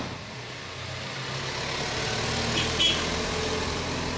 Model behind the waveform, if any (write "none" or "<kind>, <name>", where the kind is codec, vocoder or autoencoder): none